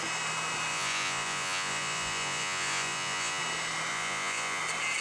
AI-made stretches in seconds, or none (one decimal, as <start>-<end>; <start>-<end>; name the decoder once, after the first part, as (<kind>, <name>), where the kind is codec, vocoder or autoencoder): 0.7-3.4 (vocoder, Vocos); 3.9-4.6